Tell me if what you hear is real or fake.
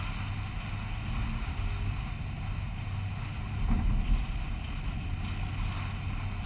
real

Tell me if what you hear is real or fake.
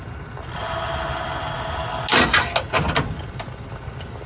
real